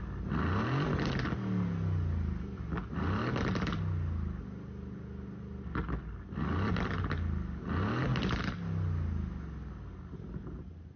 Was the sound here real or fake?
real